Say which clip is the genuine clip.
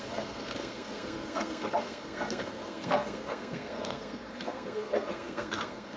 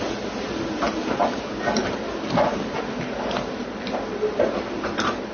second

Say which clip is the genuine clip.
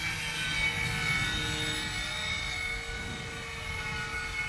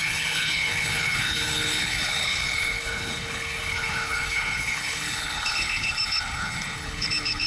first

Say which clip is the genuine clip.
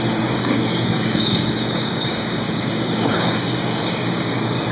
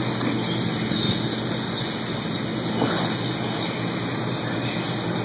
second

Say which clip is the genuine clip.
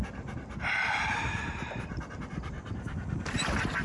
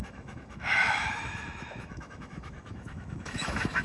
first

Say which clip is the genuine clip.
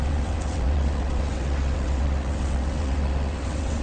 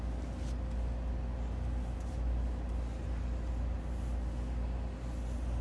second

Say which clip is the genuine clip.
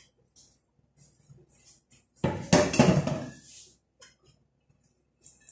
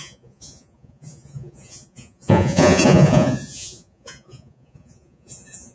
first